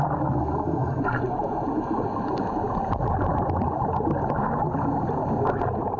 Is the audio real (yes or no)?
yes